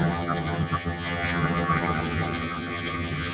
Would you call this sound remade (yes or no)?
yes